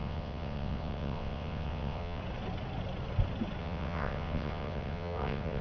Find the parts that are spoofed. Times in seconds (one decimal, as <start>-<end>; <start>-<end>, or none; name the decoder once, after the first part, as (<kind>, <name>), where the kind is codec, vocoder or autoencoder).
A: 0.0-2.2 (vocoder, WaveNeXt); 3.6-5.6